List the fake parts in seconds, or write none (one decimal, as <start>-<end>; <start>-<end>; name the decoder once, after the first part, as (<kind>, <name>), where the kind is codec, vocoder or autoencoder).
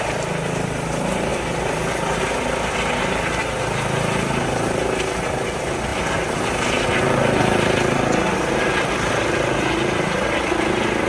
none